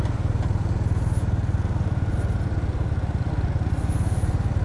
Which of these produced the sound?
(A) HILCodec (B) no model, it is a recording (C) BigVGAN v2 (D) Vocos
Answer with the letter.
B